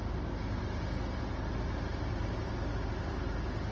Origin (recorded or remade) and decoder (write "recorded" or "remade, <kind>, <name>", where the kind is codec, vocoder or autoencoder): recorded